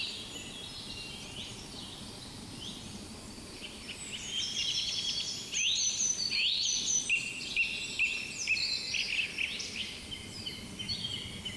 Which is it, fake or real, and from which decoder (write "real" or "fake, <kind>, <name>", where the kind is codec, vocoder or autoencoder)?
real